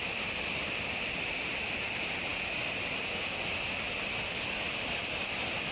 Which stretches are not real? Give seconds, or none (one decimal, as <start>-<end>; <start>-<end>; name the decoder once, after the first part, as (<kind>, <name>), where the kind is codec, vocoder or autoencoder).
none